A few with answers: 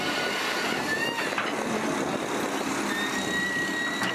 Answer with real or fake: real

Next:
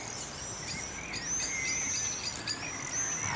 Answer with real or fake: real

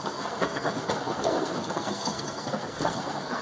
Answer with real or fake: fake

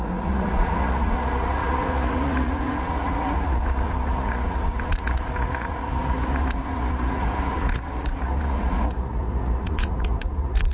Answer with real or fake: fake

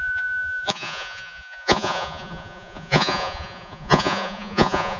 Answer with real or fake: fake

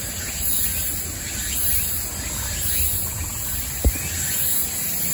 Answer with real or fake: real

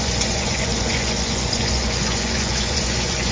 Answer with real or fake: fake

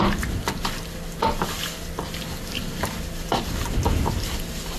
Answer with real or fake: real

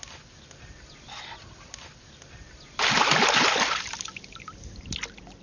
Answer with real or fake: real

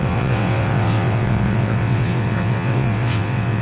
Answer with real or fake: fake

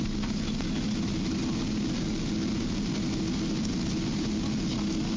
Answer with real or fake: real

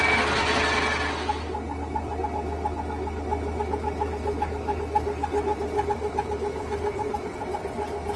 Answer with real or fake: real